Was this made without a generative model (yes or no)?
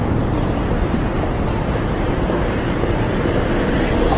yes